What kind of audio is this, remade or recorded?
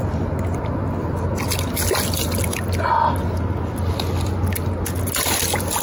recorded